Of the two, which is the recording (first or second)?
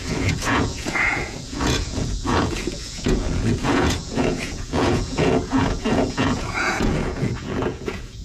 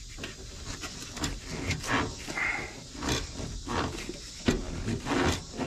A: second